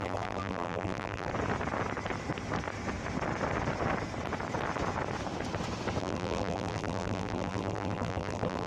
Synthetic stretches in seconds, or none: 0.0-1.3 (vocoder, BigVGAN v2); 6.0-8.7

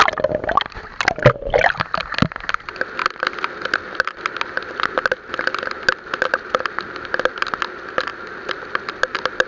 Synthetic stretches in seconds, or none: none

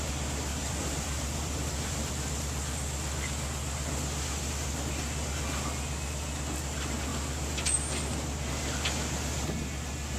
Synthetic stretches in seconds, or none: 0.5-2.1 (vocoder, BigVGAN v2)

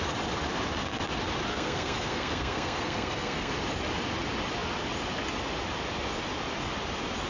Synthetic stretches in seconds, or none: 1.5-3.5 (codec, SNAC)

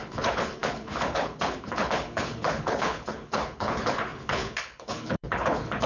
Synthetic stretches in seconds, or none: 0.0-5.9 (codec, HILCodec)

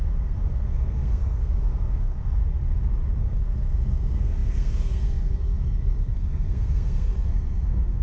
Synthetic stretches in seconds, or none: 0.0-2.4 (codec, SNAC); 3.2-8.0

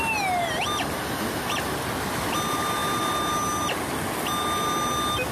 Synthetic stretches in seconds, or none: none

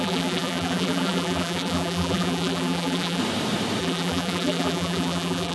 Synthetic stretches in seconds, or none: 0.0-3.2 (vocoder, BigVGAN v2); 3.8-5.5